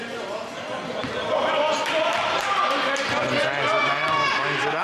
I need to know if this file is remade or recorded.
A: recorded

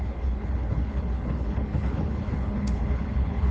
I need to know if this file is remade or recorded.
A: remade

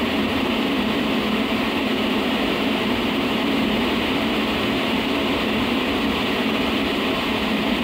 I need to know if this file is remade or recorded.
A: remade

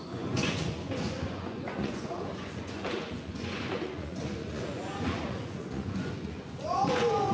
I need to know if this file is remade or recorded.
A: remade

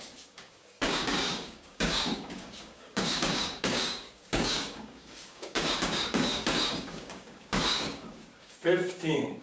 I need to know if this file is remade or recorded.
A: remade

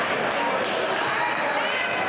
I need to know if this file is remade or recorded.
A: recorded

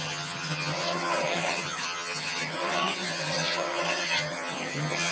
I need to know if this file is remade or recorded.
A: remade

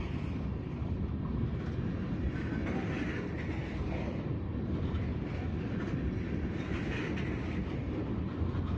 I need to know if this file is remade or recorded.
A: recorded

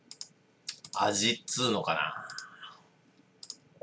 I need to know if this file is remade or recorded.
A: recorded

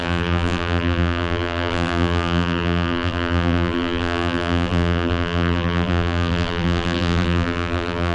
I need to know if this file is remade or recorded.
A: remade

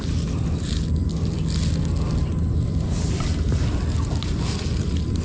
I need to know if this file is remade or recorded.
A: recorded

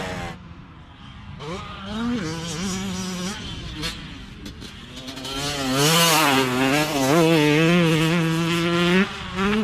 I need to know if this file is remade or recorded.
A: recorded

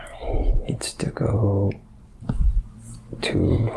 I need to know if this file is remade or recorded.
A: recorded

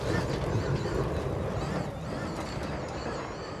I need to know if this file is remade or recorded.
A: recorded